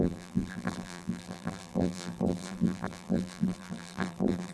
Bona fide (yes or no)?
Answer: no